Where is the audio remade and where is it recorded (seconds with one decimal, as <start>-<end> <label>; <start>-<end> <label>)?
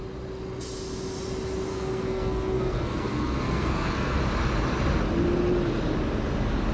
0.0-1.7 recorded; 1.7-4.2 remade; 4.2-6.7 recorded